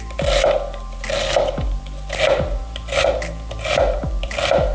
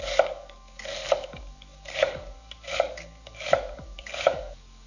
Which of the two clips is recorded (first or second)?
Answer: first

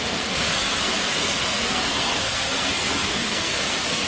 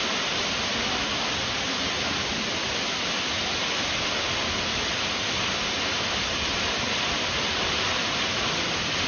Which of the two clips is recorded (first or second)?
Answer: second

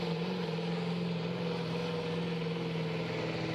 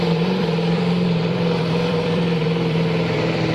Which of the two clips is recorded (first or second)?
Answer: first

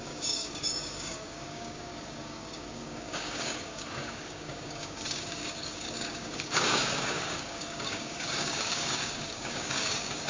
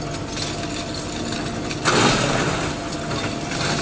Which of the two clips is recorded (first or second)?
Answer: second